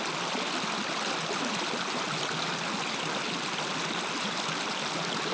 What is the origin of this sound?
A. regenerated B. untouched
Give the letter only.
B